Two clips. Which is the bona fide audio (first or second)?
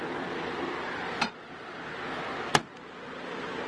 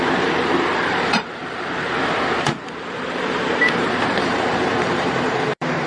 first